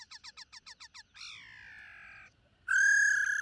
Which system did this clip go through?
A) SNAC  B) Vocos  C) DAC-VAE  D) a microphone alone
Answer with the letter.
D